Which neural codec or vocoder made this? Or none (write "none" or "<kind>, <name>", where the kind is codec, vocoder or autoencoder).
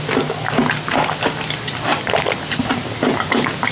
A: none